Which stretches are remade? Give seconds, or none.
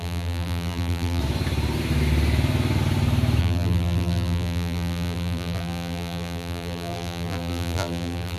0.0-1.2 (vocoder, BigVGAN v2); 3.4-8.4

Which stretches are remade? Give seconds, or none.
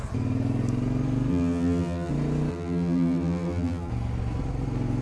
1.3-2.1 (vocoder, BigVGAN v2); 2.5-3.9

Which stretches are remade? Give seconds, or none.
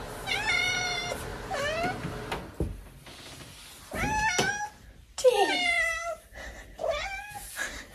0.0-1.3 (vocoder, BigVGAN v2); 4.7-7.9